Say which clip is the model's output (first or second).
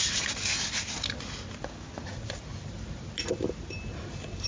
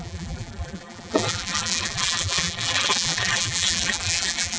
second